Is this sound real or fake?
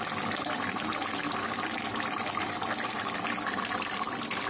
real